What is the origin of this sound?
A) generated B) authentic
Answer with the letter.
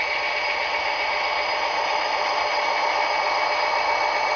A